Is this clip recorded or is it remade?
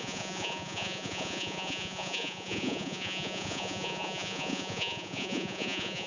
remade